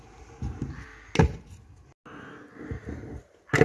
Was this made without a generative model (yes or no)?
yes